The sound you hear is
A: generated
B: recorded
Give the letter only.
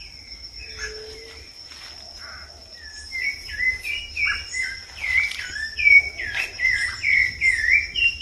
B